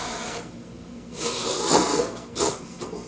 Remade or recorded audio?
remade